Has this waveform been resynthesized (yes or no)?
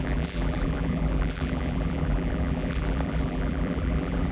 yes